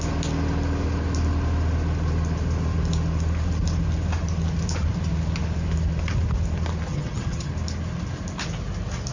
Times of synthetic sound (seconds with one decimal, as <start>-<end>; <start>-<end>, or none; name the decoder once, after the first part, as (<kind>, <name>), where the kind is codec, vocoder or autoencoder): 6.9-7.5 (vocoder, HiFi-GAN)